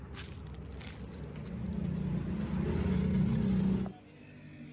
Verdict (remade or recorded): recorded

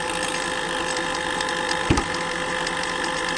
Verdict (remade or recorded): recorded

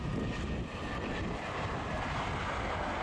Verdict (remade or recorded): recorded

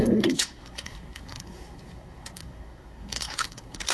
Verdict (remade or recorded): remade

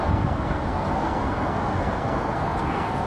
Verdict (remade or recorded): remade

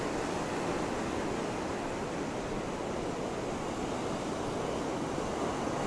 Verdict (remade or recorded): recorded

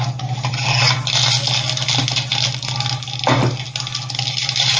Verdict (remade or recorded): recorded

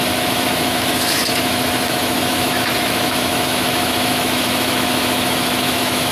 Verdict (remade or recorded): remade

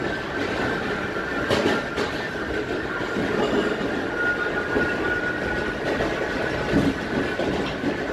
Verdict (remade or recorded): recorded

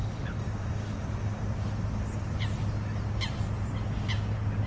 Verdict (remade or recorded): recorded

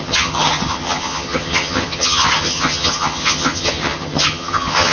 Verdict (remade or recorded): remade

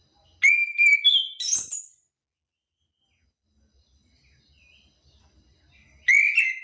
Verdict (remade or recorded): recorded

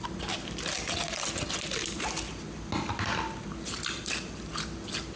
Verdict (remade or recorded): recorded